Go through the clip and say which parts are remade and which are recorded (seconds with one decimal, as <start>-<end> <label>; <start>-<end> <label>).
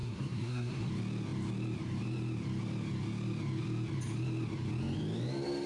0.0-0.9 remade; 0.9-5.7 recorded